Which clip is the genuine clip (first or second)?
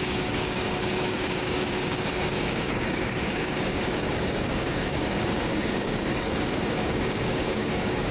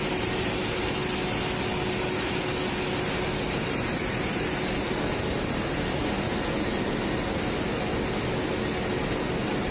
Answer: second